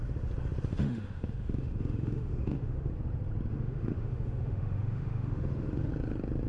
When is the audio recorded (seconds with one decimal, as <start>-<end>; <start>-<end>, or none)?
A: 0.0-0.7; 2.9-3.5; 5.9-6.5